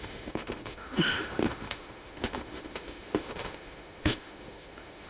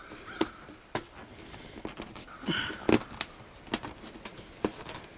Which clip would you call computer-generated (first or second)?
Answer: first